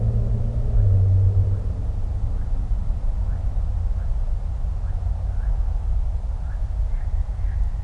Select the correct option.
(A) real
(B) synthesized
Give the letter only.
A